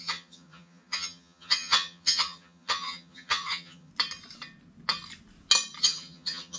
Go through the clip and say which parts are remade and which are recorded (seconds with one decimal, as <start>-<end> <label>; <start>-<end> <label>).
0.0-3.9 remade; 3.9-5.8 recorded; 5.8-6.6 remade